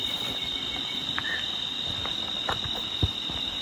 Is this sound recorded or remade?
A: remade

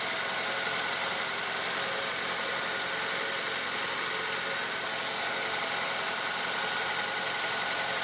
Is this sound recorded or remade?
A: recorded